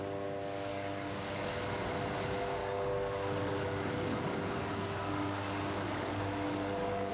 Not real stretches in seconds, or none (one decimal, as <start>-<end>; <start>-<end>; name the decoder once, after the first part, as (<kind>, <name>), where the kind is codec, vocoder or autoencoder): 0.7-1.5 (codec, DAC); 2.6-7.1